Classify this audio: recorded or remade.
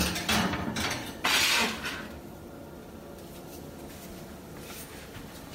recorded